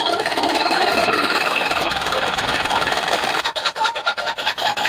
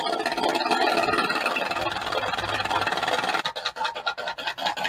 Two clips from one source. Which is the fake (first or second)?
first